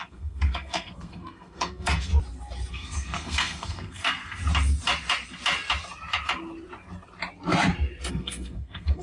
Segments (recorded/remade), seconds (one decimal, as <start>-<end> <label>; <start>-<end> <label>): 0.0-2.1 remade; 2.1-2.7 recorded; 2.7-4.4 remade; 4.4-8.1 recorded; 8.1-9.0 remade